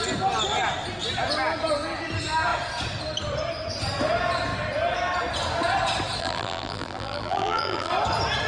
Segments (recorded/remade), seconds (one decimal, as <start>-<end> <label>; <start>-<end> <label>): 0.0-6.2 recorded; 6.2-7.9 remade; 7.9-8.5 recorded